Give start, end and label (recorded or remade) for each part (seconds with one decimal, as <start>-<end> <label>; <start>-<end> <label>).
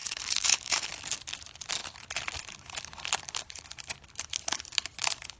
0.0-0.9 remade; 0.9-5.4 recorded